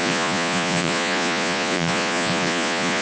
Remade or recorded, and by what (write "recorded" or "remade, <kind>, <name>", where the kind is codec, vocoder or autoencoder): remade, vocoder, Vocos